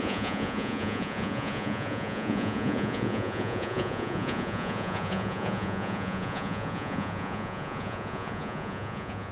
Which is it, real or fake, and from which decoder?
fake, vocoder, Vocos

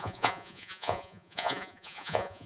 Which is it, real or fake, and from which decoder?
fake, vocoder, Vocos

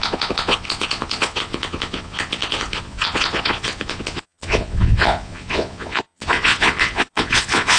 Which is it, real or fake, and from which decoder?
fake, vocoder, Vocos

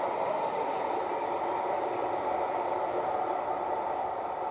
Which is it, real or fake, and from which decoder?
real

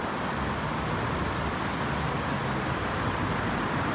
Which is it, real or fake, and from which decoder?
real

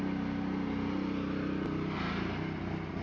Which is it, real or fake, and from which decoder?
real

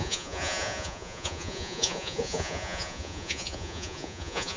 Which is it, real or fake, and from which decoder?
fake, vocoder, Vocos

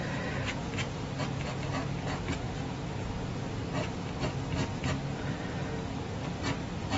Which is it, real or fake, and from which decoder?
real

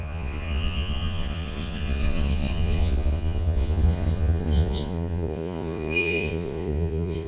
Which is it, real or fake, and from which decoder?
fake, vocoder, Vocos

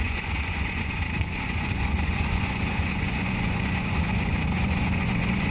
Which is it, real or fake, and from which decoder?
fake, vocoder, Vocos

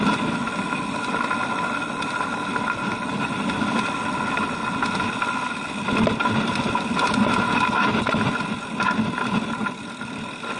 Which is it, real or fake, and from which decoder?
real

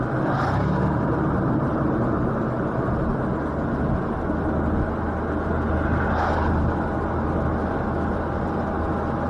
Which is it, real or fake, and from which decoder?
real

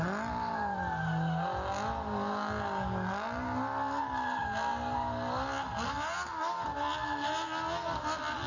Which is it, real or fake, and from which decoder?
real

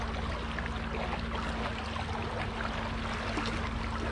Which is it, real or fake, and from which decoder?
real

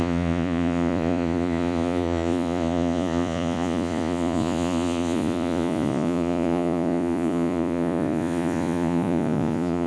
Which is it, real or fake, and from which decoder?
fake, vocoder, Vocos